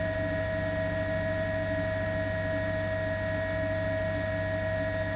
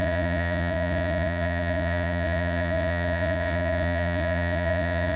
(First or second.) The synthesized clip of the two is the second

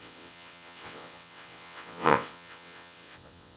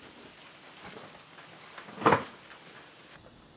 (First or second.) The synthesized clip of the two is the first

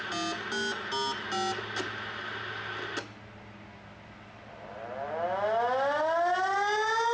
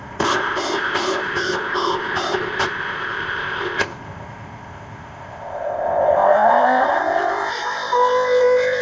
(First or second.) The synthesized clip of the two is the second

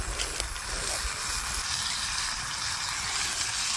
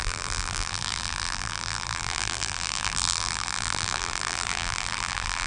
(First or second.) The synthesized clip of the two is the second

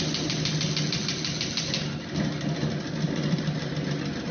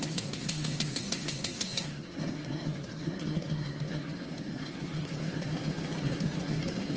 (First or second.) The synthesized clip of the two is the second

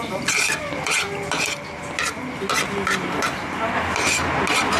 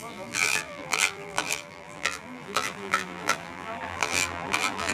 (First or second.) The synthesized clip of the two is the second